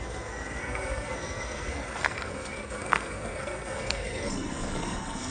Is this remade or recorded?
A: remade